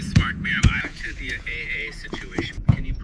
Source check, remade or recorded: remade